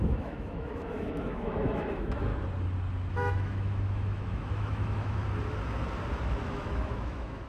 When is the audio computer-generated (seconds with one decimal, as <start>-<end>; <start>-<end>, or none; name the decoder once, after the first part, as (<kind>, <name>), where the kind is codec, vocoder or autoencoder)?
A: 0.0-2.3 (autoencoder, DAC-VAE); 3.1-5.2; 6.2-7.5